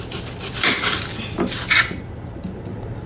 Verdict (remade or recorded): recorded